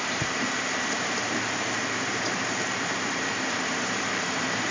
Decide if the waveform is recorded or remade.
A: remade